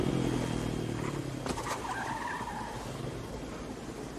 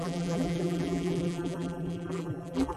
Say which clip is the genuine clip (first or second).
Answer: first